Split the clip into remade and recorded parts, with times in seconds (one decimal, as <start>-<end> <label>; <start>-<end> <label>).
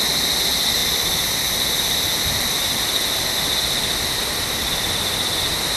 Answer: 0.0-5.8 recorded